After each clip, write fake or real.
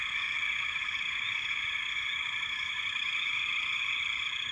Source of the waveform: fake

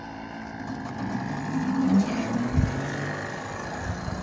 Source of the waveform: real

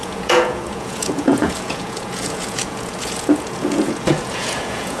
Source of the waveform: fake